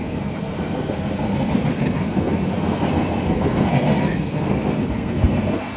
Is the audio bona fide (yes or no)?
no